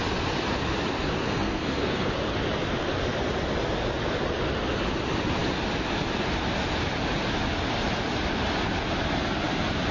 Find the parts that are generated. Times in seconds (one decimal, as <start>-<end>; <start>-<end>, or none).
1.3-2.1